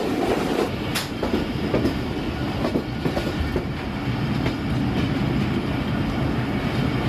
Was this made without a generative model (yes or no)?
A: yes